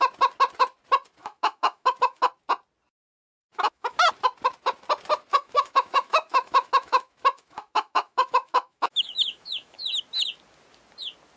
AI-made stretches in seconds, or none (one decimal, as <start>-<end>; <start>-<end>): 1.2-2.3; 3.3-4.1; 5.3-9.8